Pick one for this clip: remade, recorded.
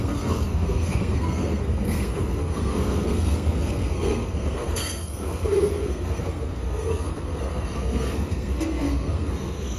remade